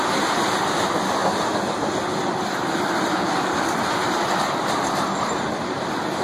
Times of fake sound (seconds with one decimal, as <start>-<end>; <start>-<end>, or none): none